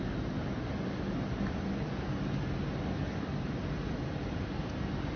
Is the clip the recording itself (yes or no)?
yes